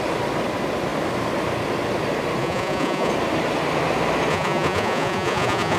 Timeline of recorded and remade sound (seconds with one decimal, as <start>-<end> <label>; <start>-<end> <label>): 0.0-2.4 recorded; 2.4-3.1 remade; 3.1-4.3 recorded; 4.3-5.8 remade